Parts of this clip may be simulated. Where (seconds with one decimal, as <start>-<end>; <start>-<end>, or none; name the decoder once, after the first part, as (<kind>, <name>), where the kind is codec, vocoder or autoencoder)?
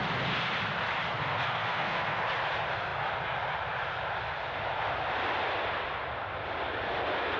1.2-2.2 (codec, SNAC)